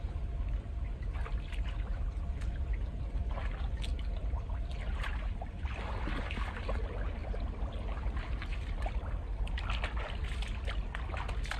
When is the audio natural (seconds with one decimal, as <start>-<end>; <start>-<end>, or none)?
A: 0.0-1.9; 3.2-4.2; 4.7-7.2; 8.1-11.6